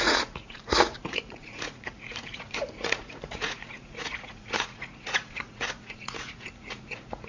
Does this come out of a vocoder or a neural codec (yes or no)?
yes